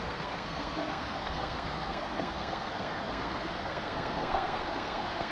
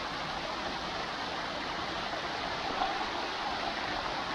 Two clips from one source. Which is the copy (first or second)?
first